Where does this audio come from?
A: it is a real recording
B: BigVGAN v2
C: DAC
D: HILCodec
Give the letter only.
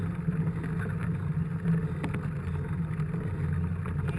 A